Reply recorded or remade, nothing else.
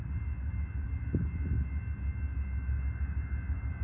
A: recorded